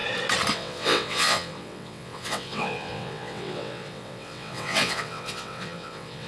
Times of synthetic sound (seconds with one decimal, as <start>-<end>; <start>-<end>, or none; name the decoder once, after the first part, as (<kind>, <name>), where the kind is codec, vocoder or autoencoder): 0.5-6.3 (vocoder, WaveNeXt)